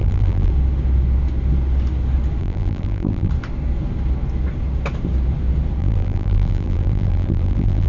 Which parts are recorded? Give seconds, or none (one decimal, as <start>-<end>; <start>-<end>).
0.5-2.4; 3.3-5.8

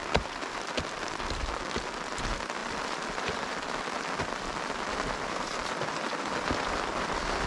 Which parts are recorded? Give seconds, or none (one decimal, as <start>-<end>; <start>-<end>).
0.0-2.6; 7.0-7.5

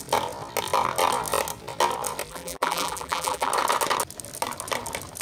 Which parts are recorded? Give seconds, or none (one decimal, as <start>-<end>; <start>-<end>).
0.0-2.3; 3.5-5.2

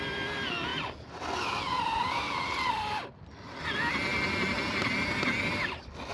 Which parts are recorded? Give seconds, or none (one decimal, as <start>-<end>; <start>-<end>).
0.0-6.1

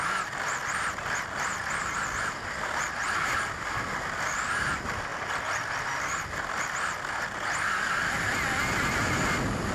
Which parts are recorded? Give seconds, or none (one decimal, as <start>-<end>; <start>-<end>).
0.0-9.7

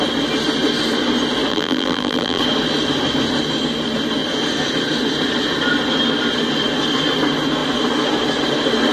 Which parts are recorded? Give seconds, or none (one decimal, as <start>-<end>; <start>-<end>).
0.0-1.5; 2.4-8.9

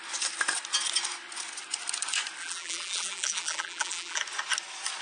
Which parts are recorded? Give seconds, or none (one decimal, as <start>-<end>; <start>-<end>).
0.0-2.4; 4.2-5.0

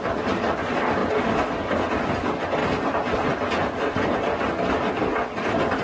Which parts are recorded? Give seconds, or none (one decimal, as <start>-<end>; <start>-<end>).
0.0-2.6; 3.1-5.8